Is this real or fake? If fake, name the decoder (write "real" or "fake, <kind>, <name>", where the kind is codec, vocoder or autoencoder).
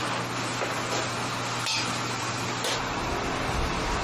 real